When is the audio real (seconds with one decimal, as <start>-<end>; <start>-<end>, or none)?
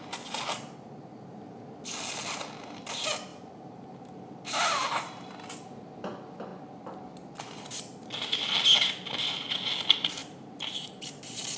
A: 0.0-3.3; 5.3-10.2; 10.9-11.6